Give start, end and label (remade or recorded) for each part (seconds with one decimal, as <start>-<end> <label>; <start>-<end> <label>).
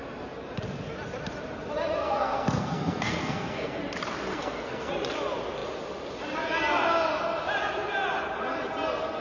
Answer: 0.0-2.0 recorded; 2.0-3.8 remade; 3.8-4.3 recorded; 4.3-4.9 remade; 4.9-9.2 recorded